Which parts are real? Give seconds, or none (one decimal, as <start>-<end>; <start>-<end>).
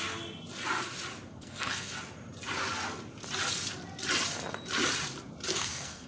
0.0-1.3; 1.9-5.5